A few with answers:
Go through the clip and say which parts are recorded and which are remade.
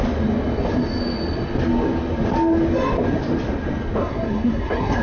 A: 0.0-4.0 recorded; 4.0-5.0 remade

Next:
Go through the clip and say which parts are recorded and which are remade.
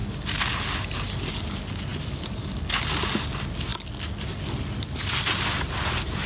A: 0.0-6.3 recorded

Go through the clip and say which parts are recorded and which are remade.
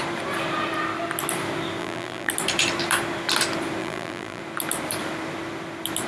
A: 0.0-1.8 recorded; 1.8-2.3 remade; 2.3-3.8 recorded; 3.8-4.4 remade; 4.4-6.1 recorded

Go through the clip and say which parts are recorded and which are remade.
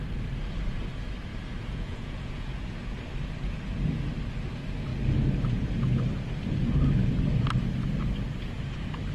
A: 0.0-1.3 recorded; 1.3-2.8 remade; 2.8-9.1 recorded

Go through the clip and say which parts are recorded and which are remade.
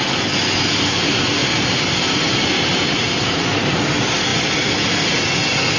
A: 0.0-1.4 recorded; 1.4-3.8 remade; 3.8-5.8 recorded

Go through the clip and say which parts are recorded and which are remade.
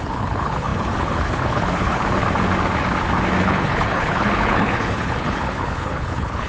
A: 0.0-2.0 remade; 2.0-3.4 recorded; 3.4-6.5 remade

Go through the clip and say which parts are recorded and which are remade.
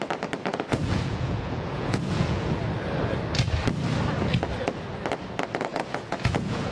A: 0.0-0.5 recorded; 0.5-2.6 remade; 2.6-5.7 recorded; 5.7-6.7 remade